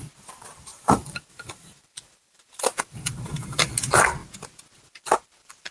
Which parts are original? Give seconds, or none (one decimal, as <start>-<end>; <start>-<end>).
0.0-0.7; 3.4-5.7